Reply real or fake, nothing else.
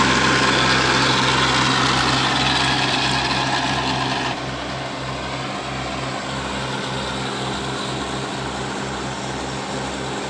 real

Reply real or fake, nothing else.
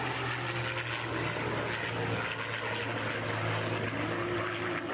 real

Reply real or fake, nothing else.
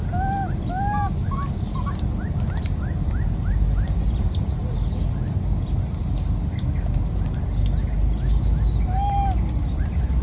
real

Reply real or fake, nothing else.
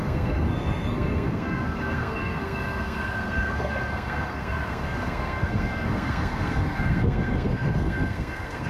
fake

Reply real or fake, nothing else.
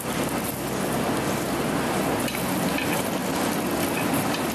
real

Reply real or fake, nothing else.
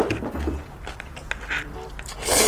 fake